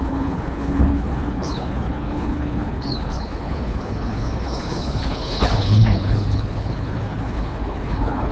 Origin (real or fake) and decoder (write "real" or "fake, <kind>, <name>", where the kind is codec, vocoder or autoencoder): fake, codec, HILCodec